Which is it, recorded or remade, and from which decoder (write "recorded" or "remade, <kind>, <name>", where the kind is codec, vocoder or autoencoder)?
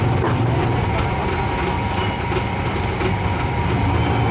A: recorded